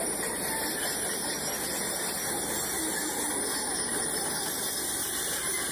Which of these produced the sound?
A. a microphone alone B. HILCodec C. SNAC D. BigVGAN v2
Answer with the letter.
A